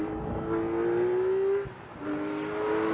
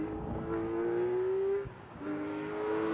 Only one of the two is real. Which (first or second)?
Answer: first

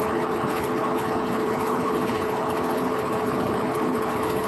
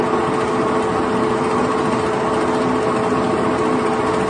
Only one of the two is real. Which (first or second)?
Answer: second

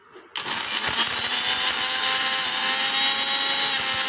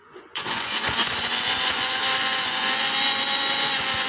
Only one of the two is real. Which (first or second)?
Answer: first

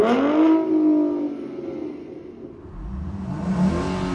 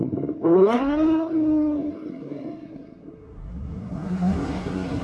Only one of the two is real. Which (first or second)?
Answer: first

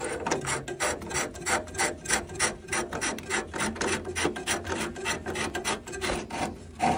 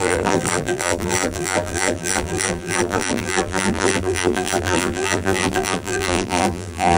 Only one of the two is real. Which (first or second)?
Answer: first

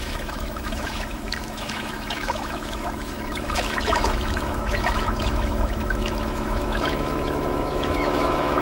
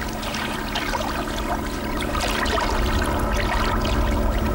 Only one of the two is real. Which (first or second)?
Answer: second